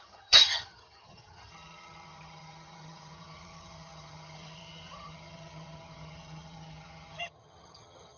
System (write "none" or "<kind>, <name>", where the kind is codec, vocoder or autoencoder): vocoder, HiFi-GAN